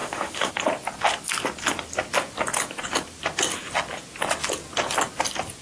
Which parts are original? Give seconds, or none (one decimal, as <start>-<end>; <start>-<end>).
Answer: 0.5-5.6